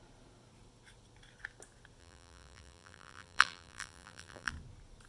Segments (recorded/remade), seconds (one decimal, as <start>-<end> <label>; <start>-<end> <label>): 0.0-2.0 recorded; 2.0-4.5 remade; 4.5-5.1 recorded